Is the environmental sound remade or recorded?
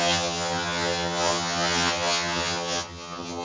remade